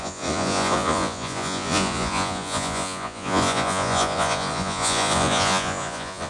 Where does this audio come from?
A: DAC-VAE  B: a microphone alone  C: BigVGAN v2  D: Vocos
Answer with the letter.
D